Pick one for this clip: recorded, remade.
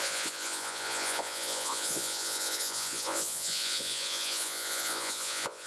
remade